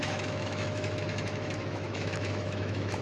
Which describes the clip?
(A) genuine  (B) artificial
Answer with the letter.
B